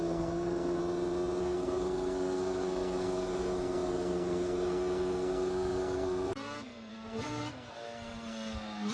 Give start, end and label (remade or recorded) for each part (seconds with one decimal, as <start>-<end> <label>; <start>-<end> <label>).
0.0-0.8 remade; 0.8-1.4 recorded; 1.4-8.9 remade